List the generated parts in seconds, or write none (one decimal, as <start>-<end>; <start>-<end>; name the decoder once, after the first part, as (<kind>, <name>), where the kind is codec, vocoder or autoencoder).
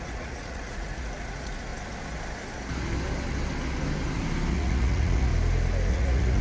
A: 0.0-1.7 (vocoder, Vocos); 4.5-5.3; 5.9-6.4